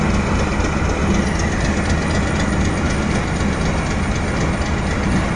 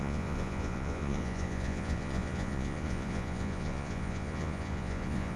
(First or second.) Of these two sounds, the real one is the first